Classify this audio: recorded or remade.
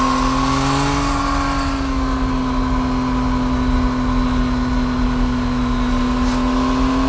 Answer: recorded